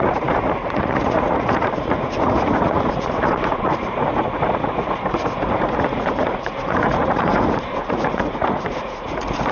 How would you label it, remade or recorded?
remade